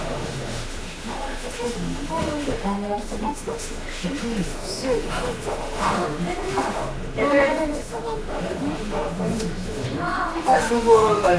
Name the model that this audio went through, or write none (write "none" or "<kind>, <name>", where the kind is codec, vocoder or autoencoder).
autoencoder, DAC-VAE